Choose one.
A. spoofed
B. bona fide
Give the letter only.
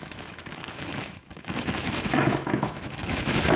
A